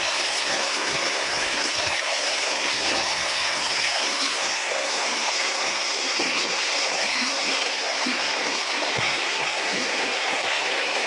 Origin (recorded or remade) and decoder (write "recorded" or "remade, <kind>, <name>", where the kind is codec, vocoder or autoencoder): remade, codec, SNAC